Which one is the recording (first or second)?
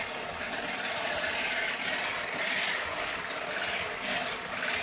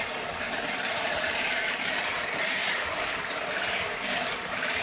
first